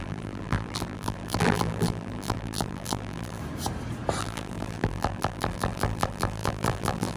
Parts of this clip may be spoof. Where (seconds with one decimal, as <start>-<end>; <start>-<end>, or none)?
0.0-3.4; 4.2-7.2